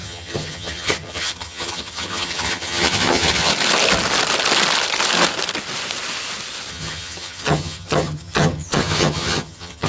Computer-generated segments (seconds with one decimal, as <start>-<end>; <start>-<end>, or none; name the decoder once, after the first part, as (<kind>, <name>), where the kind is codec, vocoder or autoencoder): 0.0-3.5 (vocoder, HiFi-GAN); 6.7-9.9